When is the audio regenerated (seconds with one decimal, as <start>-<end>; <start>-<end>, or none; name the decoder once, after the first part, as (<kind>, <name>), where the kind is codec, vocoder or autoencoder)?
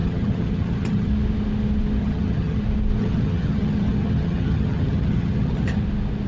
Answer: 0.0-1.1 (vocoder, HiFi-GAN); 2.0-2.6; 3.0-5.8